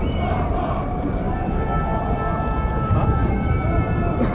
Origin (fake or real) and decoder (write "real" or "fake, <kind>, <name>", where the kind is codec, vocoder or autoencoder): fake, vocoder, BigVGAN v2